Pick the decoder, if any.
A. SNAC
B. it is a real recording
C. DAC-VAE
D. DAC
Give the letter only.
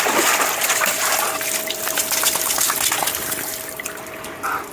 B